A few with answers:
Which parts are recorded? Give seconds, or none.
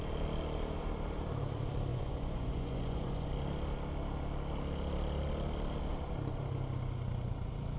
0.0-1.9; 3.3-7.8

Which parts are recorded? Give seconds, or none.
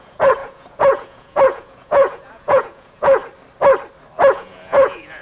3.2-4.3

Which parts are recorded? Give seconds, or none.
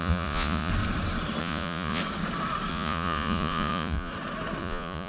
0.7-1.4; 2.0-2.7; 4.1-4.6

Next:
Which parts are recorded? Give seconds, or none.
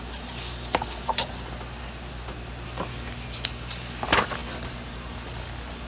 0.0-5.9